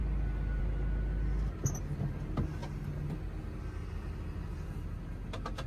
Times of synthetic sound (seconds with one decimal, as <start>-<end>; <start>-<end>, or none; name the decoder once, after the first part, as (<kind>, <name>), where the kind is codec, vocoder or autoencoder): none